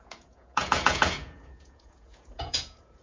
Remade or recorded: remade